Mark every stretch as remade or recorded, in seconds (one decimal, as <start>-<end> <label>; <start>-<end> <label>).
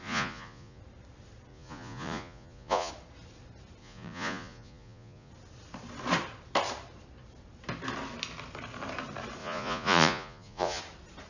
0.0-0.8 remade; 0.8-1.5 recorded; 1.5-2.9 remade; 2.9-3.8 recorded; 3.8-5.3 remade; 5.3-9.4 recorded; 9.4-10.8 remade; 10.8-11.3 recorded